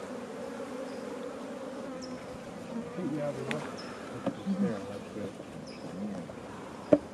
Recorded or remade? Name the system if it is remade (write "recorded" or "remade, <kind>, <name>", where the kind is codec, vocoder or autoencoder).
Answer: remade, vocoder, BigVGAN v2